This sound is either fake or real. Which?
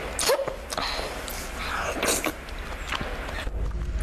real